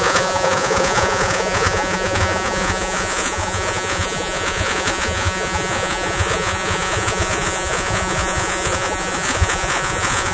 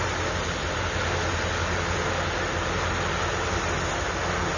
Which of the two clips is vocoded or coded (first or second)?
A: first